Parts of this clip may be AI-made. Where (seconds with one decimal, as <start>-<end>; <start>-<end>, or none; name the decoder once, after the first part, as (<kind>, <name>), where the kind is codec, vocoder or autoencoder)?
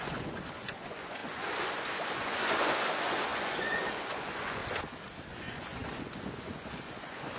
0.0-4.6 (vocoder, Vocos); 5.3-7.4